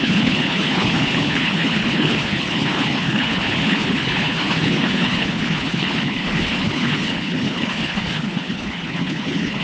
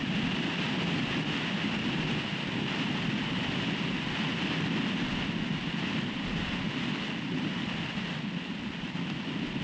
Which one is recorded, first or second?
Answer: second